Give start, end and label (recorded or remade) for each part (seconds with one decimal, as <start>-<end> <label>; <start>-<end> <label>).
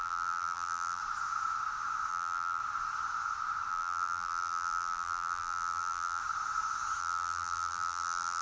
0.0-1.0 remade; 1.0-2.1 recorded; 2.1-2.6 remade; 2.6-3.7 recorded; 3.7-6.2 remade; 6.2-7.0 recorded; 7.0-8.4 remade